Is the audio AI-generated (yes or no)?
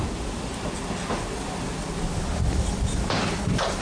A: yes